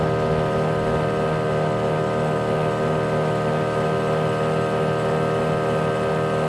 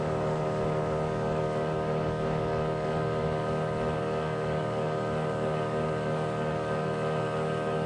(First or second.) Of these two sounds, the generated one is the second